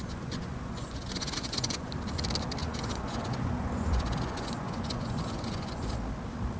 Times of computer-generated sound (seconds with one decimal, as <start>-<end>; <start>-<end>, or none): 0.0-1.9; 2.6-5.9